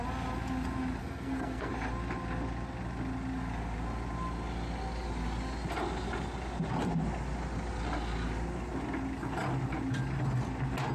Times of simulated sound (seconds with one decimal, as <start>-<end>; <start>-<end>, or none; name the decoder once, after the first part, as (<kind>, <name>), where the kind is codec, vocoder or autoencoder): 1.0-1.7 (codec, SNAC)